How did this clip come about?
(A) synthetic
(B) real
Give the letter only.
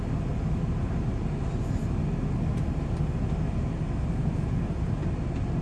B